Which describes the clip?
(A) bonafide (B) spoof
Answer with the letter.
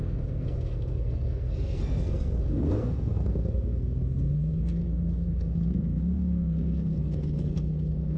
B